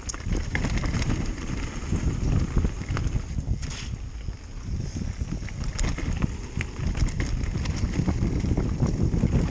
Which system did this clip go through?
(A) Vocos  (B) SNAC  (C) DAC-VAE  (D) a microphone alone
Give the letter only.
D